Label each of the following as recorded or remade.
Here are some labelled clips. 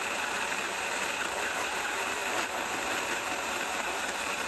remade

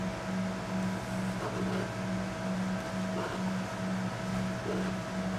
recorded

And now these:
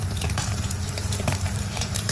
remade